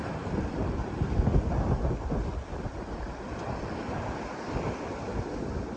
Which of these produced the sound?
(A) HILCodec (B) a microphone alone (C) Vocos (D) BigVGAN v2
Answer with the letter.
B